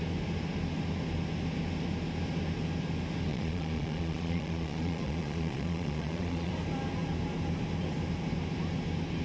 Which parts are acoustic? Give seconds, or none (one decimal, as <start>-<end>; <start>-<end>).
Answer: 0.0-3.3; 6.5-9.2